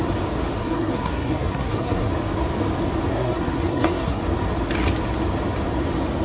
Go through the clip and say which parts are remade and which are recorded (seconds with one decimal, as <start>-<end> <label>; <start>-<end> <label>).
0.0-0.6 recorded; 0.6-2.1 remade; 2.1-3.1 recorded; 3.1-4.2 remade; 4.2-6.2 recorded